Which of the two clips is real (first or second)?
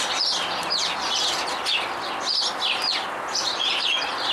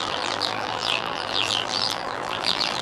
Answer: first